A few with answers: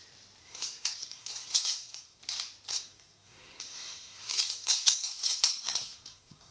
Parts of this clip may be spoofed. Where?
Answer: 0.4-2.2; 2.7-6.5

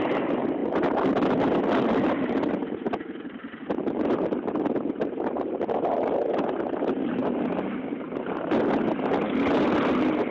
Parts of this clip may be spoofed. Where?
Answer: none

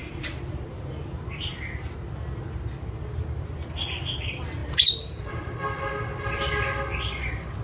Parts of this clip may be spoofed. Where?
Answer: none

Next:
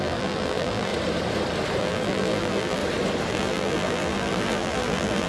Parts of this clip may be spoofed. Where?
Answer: 0.0-0.9; 1.8-2.8; 3.3-5.3

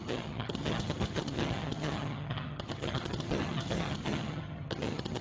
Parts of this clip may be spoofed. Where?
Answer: 0.0-5.2